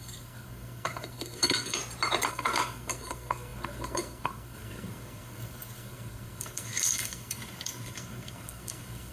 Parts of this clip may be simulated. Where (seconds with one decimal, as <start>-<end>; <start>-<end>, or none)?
0.0-1.8; 2.3-9.1